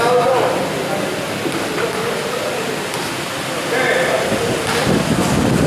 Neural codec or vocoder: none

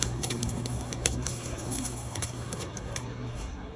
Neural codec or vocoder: codec, SNAC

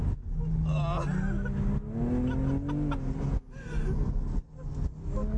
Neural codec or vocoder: none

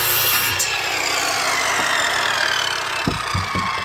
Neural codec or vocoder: none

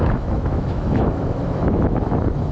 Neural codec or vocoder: autoencoder, DAC-VAE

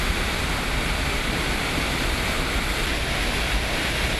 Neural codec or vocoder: none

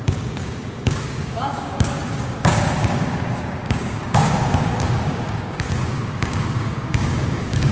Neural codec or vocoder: codec, DAC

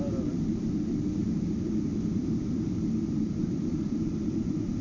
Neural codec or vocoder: vocoder, BigVGAN v2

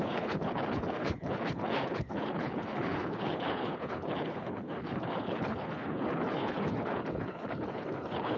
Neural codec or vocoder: codec, HILCodec